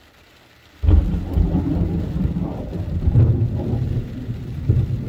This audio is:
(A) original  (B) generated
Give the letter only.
A